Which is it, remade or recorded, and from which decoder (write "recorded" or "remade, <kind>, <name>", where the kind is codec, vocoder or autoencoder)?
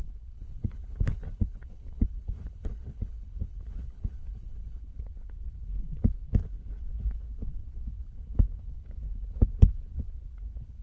remade, codec, HILCodec